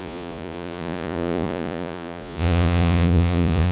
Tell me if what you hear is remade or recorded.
remade